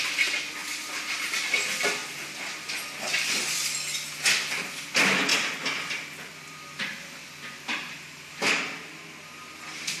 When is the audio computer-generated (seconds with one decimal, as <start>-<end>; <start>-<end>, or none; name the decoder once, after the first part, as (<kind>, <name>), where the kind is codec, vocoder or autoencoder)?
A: none